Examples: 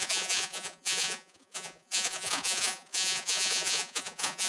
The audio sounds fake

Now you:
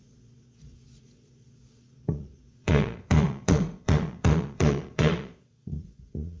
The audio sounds fake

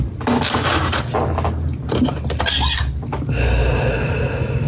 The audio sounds real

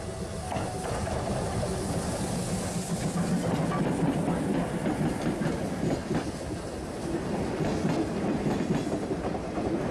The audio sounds real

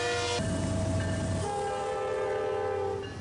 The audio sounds real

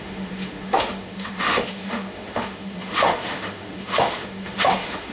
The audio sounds fake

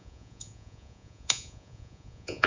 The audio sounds fake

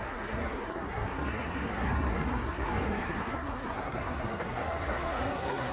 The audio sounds fake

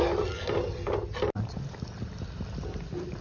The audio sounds real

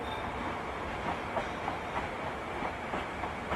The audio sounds real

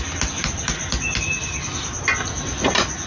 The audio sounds real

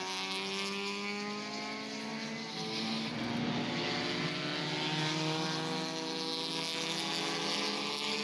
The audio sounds real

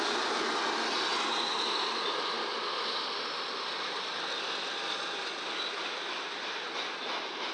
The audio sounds real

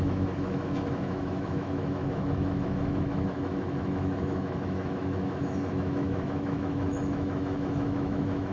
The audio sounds fake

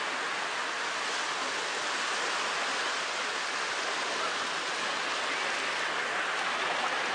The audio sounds real